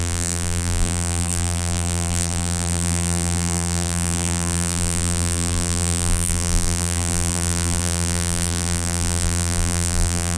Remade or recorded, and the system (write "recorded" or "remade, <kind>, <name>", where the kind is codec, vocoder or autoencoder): remade, vocoder, BigVGAN v2